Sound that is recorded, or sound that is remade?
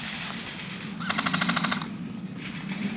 recorded